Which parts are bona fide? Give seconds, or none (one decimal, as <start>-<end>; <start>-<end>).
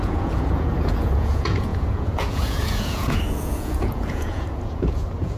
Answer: none